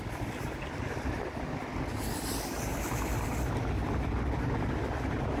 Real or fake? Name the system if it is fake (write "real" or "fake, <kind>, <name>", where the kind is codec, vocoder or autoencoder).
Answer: real